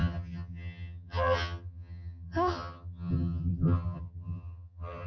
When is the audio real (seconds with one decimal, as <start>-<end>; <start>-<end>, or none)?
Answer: none